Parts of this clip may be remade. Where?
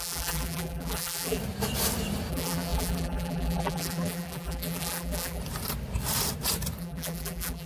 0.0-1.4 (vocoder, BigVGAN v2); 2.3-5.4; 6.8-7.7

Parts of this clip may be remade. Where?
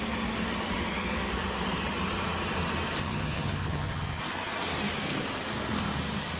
3.0-4.2 (vocoder, HiFi-GAN)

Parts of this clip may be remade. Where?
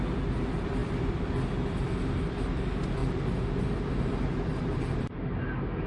3.0-3.5 (vocoder, BigVGAN v2); 4.6-5.2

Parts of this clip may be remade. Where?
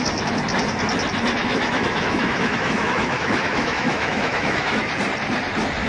1.4-4.9 (autoencoder, DAC-VAE)